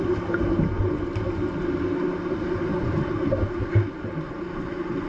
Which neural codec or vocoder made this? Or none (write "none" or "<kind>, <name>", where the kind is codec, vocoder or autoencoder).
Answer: none